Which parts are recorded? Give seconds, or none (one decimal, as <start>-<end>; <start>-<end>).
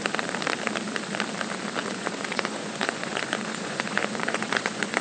0.0-1.8